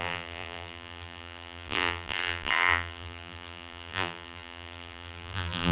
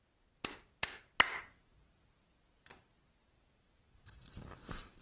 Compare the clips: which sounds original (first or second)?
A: second